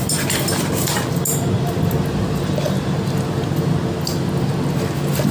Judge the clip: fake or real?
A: real